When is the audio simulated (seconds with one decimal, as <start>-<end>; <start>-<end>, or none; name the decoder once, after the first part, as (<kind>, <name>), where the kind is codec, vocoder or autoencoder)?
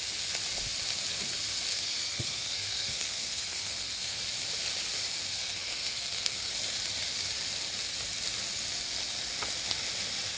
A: 1.7-4.2 (codec, SNAC); 5.3-6.5